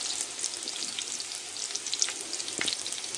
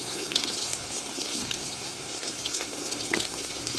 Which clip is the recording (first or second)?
first